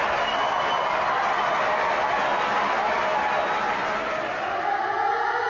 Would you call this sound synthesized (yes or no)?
no